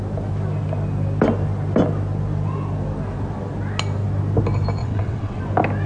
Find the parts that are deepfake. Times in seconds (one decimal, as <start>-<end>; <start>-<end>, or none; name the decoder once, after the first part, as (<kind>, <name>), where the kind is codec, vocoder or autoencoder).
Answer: 4.8-5.4 (vocoder, WaveNeXt)